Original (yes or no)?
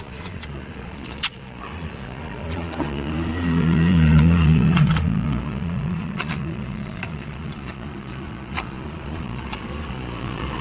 no